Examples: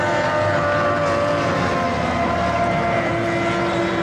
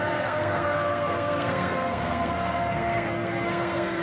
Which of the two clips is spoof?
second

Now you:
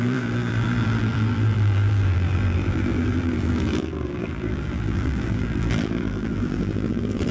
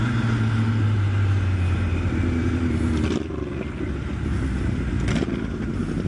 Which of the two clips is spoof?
first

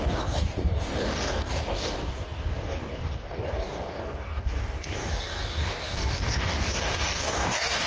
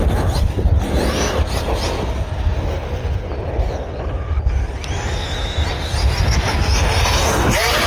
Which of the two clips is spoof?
first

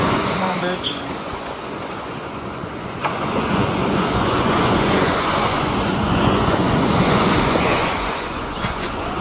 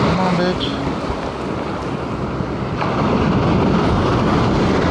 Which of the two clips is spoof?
first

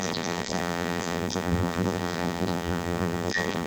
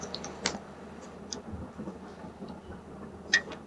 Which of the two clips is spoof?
first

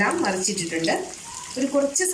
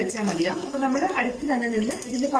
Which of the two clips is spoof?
second